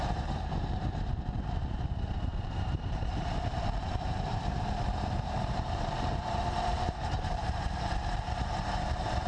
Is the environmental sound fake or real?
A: fake